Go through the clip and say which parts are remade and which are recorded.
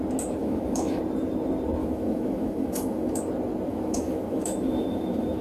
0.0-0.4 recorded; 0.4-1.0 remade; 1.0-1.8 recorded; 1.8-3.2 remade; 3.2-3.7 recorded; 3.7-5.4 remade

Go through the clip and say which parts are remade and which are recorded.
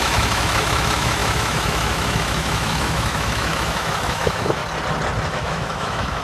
0.0-4.6 remade; 4.6-5.3 recorded; 5.3-6.2 remade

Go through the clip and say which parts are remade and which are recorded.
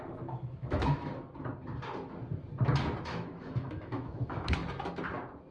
0.0-1.1 remade; 1.1-3.0 recorded; 3.0-4.6 remade; 4.6-5.5 recorded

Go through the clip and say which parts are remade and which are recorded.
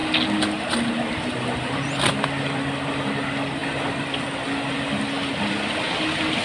0.0-6.4 recorded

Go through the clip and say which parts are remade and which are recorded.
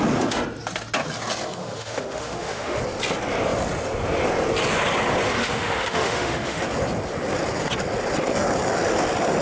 0.0-1.6 recorded; 1.6-2.8 remade; 2.8-5.4 recorded; 5.4-6.6 remade; 6.6-9.4 recorded